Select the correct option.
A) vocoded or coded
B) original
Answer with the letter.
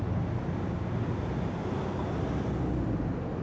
B